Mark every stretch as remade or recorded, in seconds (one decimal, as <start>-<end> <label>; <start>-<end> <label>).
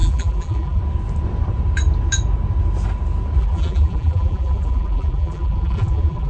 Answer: 0.0-0.8 remade; 0.8-3.4 recorded; 3.4-6.3 remade